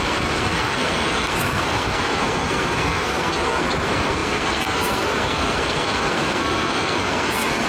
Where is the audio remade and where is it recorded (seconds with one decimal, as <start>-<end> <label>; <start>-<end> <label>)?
0.0-7.7 remade